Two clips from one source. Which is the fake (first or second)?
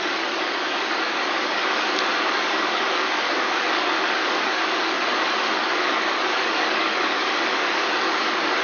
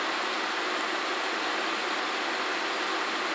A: first